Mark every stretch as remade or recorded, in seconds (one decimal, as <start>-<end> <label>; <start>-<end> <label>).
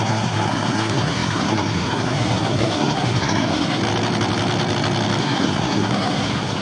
0.0-3.8 remade; 3.8-5.2 recorded; 5.2-6.6 remade